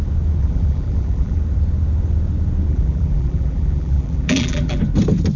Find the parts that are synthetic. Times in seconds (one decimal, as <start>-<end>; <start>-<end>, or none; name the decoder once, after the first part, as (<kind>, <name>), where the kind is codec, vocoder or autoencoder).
0.4-1.4 (vocoder, BigVGAN v2); 2.7-4.8

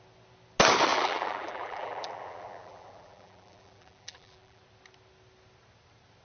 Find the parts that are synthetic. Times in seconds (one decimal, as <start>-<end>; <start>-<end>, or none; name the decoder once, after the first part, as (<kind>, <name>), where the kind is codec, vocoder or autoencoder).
0.9-4.6 (vocoder, BigVGAN v2)

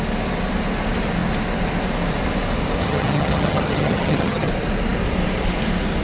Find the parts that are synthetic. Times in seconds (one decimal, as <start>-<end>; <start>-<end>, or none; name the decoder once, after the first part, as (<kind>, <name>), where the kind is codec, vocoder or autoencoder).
2.8-4.5 (vocoder, HiFi-GAN)